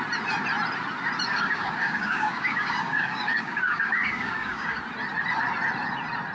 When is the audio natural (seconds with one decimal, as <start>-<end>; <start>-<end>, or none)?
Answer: 0.0-1.3; 4.8-6.3